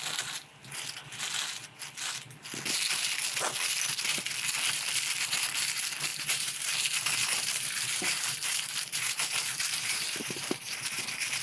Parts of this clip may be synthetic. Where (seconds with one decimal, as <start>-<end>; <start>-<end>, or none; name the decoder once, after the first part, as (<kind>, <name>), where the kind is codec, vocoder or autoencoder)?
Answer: 6.1-11.0 (vocoder, BigVGAN v2)